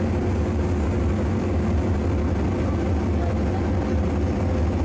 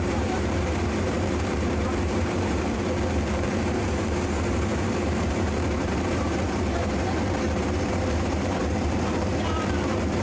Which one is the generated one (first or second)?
second